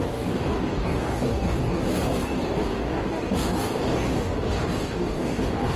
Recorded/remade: remade